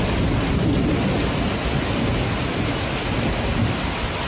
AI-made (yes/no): no